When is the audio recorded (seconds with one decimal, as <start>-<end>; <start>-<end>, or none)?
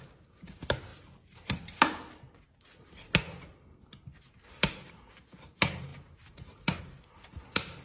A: 0.0-7.8